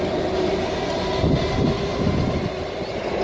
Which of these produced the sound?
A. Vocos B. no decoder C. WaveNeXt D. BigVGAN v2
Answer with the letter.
B